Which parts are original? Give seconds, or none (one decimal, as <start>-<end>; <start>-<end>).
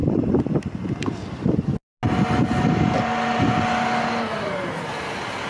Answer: 0.0-5.5